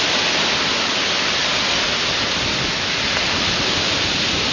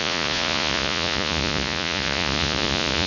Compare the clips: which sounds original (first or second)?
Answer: first